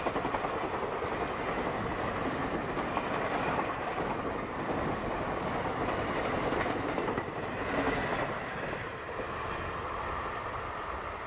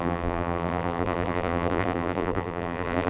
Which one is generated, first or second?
second